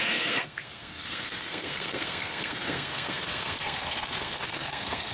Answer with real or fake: fake